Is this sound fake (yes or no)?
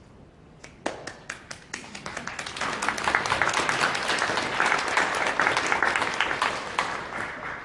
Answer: no